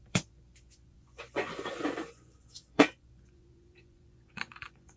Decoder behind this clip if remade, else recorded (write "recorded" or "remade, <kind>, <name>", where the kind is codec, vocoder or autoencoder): remade, vocoder, Vocos